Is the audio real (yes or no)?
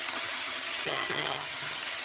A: no